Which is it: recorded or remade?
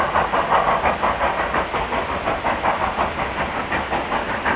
recorded